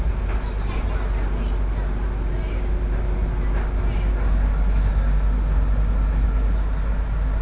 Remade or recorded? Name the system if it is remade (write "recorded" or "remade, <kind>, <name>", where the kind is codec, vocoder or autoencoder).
recorded